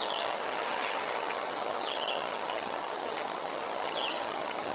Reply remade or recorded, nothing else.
remade